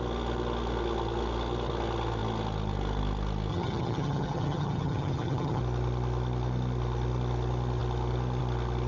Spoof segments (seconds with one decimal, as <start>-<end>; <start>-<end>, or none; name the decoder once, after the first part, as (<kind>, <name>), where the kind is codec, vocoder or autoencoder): 3.5-5.6 (vocoder, HiFi-GAN)